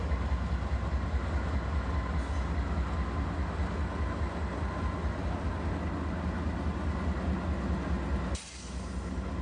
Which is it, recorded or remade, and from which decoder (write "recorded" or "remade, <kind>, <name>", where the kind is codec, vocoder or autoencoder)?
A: recorded